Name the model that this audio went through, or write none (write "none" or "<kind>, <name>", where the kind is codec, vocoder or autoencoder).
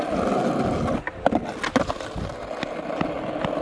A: none